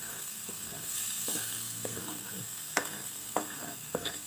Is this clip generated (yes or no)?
yes